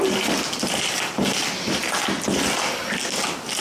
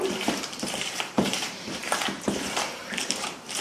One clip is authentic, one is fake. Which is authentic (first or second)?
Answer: first